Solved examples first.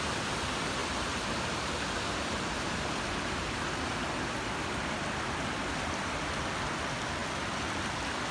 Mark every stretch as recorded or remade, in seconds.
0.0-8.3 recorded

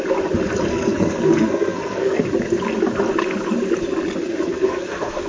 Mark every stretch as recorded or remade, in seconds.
0.0-0.7 recorded; 0.7-2.2 remade; 2.2-4.2 recorded; 4.2-5.3 remade